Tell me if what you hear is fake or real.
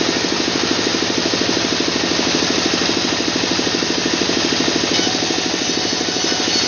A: real